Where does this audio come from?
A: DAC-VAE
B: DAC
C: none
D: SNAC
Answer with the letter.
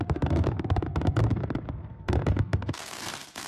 D